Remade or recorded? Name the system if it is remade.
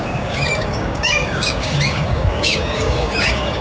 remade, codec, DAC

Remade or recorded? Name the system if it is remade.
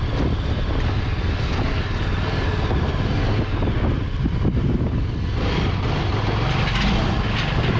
recorded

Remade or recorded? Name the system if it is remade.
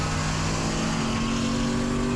recorded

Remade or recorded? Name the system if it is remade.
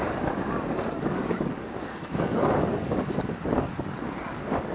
remade, codec, DAC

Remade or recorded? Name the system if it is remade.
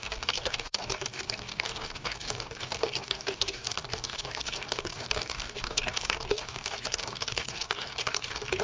remade, codec, DAC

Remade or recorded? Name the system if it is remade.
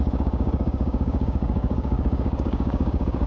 remade, codec, DAC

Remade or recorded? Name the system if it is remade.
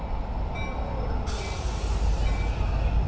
recorded